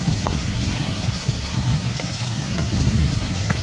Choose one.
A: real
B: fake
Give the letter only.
B